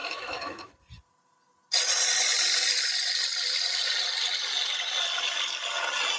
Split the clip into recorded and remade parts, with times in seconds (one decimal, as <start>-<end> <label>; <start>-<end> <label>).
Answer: 0.0-0.7 remade; 0.7-6.2 recorded